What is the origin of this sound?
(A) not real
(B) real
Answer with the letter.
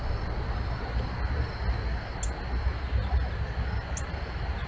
B